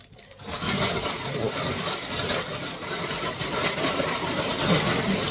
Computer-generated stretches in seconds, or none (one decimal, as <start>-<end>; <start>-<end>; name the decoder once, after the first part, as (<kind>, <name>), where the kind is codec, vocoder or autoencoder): none